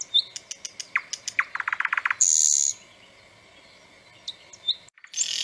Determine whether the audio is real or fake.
real